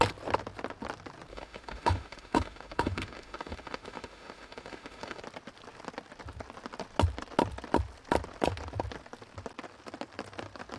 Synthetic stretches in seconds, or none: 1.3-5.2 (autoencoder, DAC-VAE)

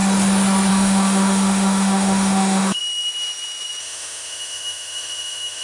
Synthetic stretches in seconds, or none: 0.7-2.8 (autoencoder, DAC-VAE); 3.8-5.6

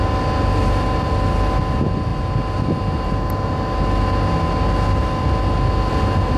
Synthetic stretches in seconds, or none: none

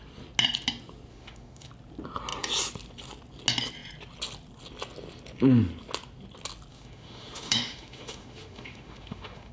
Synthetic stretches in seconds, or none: 1.1-1.7 (autoencoder, DAC-VAE); 6.7-9.5

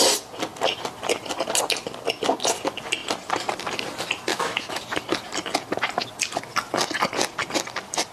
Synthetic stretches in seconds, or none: 4.3-4.8 (autoencoder, DAC-VAE)